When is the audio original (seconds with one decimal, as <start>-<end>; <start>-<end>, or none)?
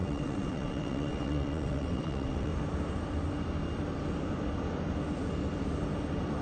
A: 2.5-6.4